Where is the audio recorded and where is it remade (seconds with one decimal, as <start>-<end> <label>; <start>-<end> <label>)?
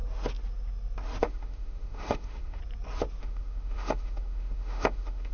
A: 0.0-1.2 recorded; 1.2-2.6 remade; 2.6-3.2 recorded; 3.2-5.3 remade